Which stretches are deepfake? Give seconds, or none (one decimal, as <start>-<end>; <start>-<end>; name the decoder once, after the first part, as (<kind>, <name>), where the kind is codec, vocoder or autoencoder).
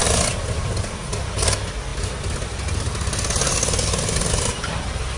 none